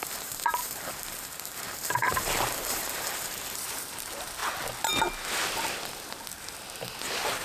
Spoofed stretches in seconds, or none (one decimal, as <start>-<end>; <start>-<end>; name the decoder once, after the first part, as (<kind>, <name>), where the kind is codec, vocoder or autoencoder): 0.0-4.4 (vocoder, BigVGAN v2)